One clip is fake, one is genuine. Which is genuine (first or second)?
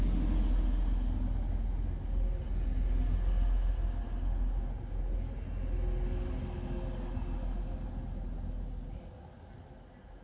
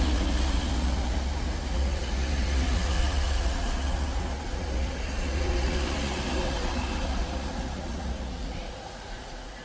first